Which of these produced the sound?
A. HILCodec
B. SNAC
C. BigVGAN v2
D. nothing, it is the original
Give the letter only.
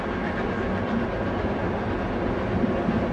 D